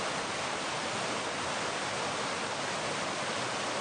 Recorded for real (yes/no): yes